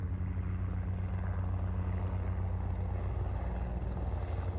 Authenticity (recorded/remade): recorded